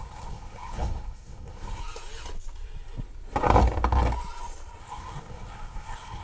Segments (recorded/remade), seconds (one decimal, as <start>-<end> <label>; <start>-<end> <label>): 0.0-1.8 remade; 1.8-4.8 recorded; 4.8-6.2 remade